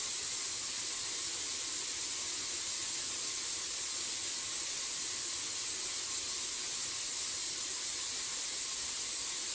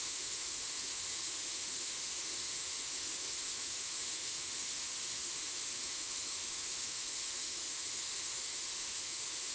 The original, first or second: first